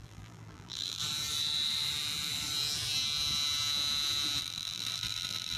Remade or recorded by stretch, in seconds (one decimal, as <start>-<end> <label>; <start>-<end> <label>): 0.0-1.0 remade; 1.0-4.4 recorded; 4.4-5.6 remade